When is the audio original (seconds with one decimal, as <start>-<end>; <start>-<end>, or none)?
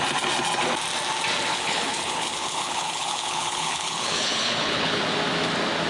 0.0-1.5; 5.0-5.9